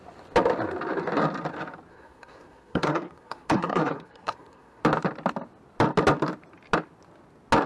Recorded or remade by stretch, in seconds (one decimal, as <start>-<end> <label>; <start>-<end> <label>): 0.0-1.9 recorded; 1.9-4.8 remade; 4.8-7.7 recorded